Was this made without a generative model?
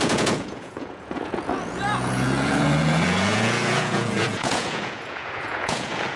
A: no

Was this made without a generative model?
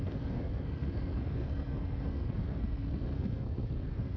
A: no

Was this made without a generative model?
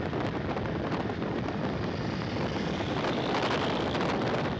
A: yes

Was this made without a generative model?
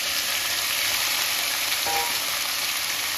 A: no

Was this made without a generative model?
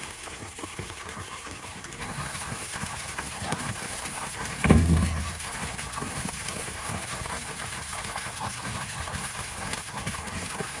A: no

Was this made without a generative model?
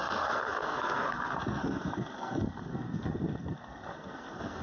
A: no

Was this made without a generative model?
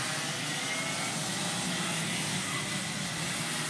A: yes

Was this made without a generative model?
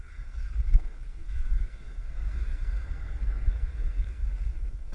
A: no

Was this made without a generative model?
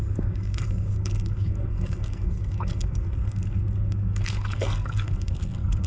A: no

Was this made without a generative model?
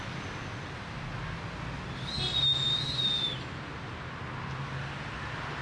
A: yes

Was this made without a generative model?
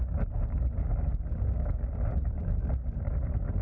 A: yes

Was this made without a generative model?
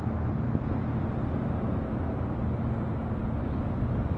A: yes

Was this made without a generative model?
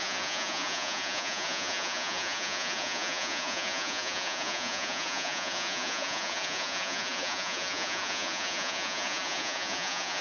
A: no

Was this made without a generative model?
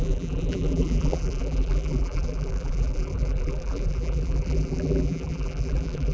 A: no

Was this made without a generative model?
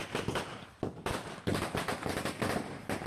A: yes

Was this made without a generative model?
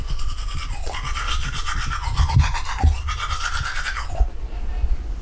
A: yes